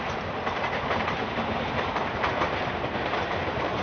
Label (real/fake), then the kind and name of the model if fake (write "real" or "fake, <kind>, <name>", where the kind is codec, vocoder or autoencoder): fake, vocoder, BigVGAN v2